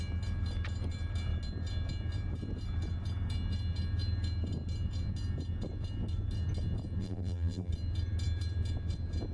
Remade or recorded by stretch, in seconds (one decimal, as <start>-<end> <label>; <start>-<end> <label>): 0.0-7.0 recorded; 7.0-7.7 remade; 7.7-9.3 recorded